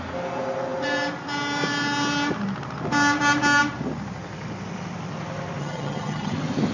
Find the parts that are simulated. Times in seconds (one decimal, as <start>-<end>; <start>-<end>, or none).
5.6-6.3